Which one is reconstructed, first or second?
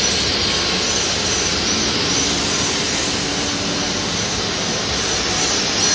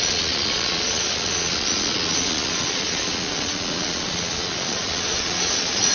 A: second